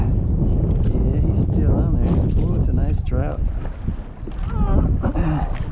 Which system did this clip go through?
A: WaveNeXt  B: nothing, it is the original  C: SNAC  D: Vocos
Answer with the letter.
B